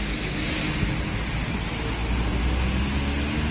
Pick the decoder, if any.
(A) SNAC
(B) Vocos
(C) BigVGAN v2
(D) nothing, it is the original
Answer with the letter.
D